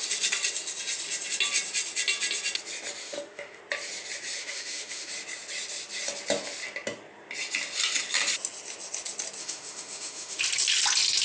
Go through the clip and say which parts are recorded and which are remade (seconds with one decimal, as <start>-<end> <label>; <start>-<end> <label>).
0.0-3.0 recorded; 3.0-3.6 remade; 3.6-4.4 recorded; 4.4-5.1 remade; 5.1-9.4 recorded; 9.4-10.4 remade; 10.4-11.2 recorded